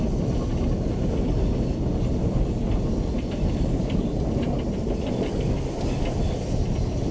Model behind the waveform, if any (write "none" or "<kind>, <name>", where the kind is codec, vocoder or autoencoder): none